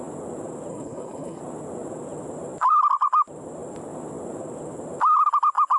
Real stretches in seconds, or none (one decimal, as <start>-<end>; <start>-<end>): 0.0-0.7; 1.4-5.8